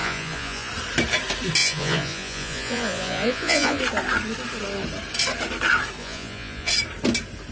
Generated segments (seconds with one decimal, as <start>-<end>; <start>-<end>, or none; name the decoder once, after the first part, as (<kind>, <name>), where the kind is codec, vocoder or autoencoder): 0.0-0.7 (vocoder, Vocos); 1.6-3.8; 6.0-6.7